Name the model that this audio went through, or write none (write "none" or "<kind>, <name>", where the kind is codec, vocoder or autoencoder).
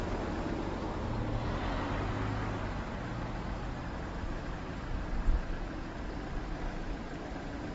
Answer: none